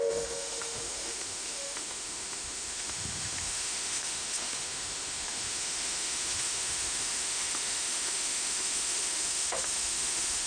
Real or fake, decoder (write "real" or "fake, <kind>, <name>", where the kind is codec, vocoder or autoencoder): fake, autoencoder, DAC-VAE